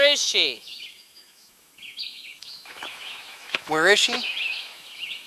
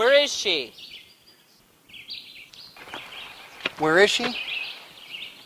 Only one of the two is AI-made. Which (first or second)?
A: first